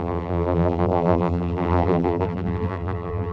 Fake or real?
fake